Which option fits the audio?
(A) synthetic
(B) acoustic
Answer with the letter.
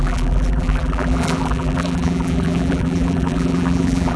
A